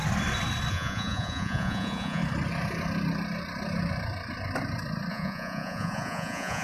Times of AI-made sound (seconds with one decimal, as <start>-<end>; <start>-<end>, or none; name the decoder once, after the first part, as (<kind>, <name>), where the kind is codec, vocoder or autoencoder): 0.7-2.2 (vocoder, Vocos); 5.1-6.6

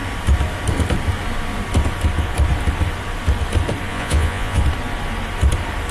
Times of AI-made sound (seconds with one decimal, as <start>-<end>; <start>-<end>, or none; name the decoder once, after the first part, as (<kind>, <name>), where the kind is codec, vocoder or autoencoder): 3.9-4.6 (vocoder, Vocos)

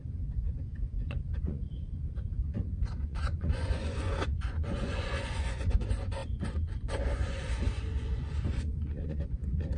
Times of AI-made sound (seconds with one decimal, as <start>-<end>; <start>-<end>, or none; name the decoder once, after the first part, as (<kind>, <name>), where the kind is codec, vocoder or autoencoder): 0.0-9.8 (vocoder, Vocos)